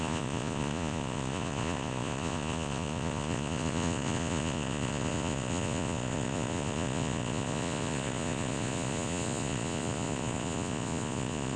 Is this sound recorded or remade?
remade